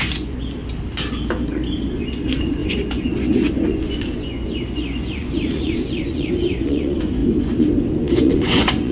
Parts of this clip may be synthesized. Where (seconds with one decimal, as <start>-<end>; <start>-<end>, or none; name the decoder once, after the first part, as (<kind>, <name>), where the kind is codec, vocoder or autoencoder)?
0.0-0.6 (vocoder, Vocos); 1.5-8.9